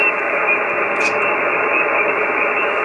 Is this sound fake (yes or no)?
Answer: no